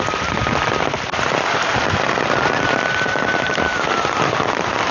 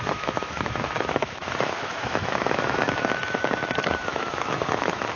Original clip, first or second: first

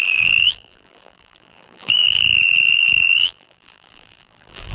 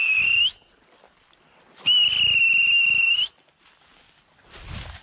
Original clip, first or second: second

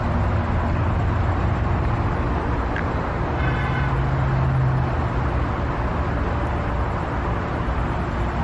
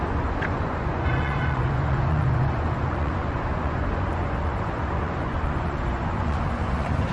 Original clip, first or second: first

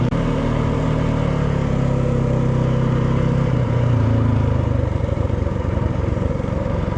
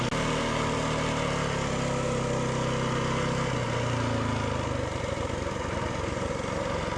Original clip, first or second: second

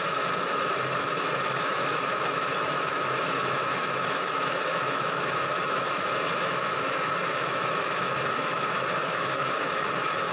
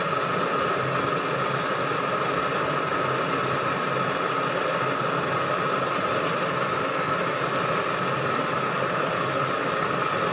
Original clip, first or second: second